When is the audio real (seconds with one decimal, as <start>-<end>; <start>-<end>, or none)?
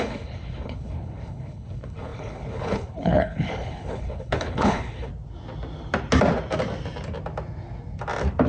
5.1-8.5